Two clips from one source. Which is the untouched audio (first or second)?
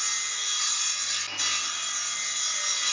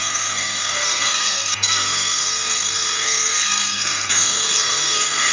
first